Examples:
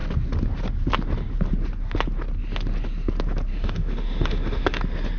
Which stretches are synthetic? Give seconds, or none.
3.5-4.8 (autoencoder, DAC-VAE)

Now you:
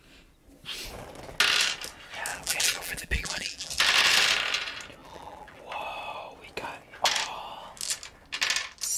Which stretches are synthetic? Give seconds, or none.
2.3-3.7 (vocoder, BigVGAN v2); 5.0-5.6

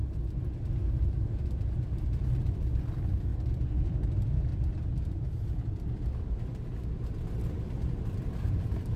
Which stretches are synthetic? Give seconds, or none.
3.3-4.1 (vocoder, BigVGAN v2); 4.5-6.4